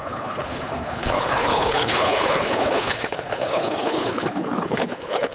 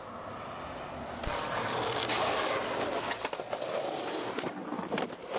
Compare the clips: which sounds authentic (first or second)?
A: second